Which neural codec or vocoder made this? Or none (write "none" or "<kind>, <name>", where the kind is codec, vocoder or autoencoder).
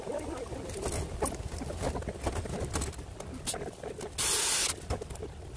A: none